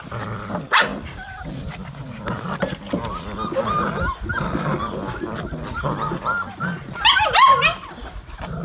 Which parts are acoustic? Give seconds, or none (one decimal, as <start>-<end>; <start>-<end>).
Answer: 0.0-8.6